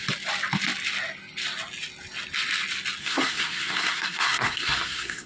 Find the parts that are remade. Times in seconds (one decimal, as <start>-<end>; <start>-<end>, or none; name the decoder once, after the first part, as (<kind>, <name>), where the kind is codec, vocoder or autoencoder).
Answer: 3.0-5.3 (codec, SNAC)